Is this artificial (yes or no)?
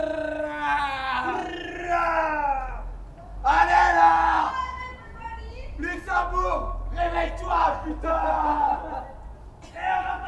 no